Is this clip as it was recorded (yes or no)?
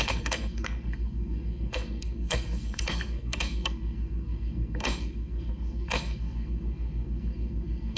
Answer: no